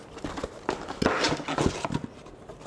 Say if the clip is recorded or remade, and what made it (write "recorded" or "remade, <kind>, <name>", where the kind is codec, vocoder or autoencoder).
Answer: recorded